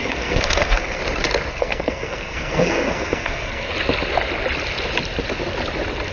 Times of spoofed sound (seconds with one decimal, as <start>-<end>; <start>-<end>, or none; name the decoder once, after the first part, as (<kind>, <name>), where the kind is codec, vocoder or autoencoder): 0.0-1.0 (codec, SNAC); 1.5-3.7